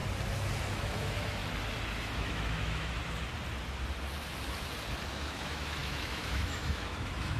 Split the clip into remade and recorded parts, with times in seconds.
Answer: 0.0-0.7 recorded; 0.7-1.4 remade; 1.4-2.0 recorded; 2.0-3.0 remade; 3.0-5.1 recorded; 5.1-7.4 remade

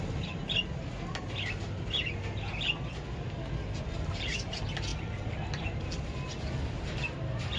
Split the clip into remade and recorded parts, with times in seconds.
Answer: 0.0-4.9 recorded; 4.9-5.9 remade; 5.9-7.6 recorded

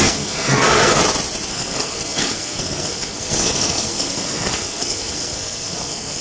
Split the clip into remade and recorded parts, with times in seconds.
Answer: 0.0-1.0 remade; 1.0-1.5 recorded; 1.5-6.2 remade

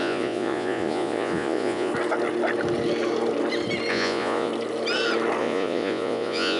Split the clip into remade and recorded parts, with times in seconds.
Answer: 0.0-1.9 remade; 1.9-3.9 recorded; 3.9-4.5 remade; 4.5-5.4 recorded; 5.4-6.6 remade